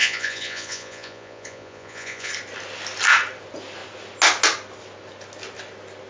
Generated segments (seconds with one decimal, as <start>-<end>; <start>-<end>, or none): 0.0-2.3